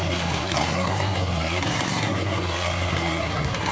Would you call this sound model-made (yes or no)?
yes